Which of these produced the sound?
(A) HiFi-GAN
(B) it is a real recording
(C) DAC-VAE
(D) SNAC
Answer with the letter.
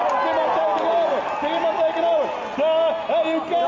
B